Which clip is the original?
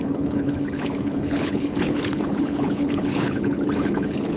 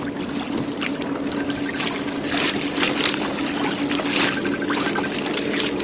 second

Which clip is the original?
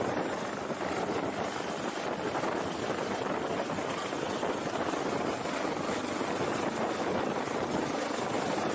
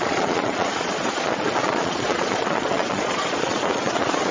first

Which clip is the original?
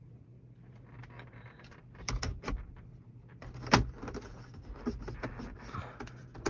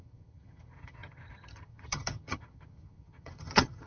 first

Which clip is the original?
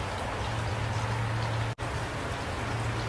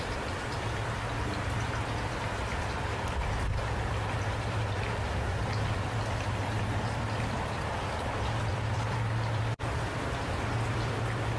first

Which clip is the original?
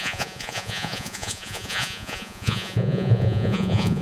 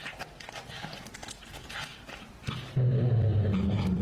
second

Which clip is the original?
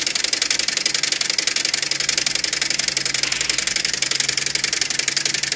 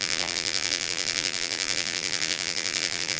first